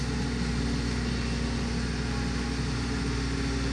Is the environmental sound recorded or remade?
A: recorded